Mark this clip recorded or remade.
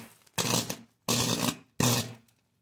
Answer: recorded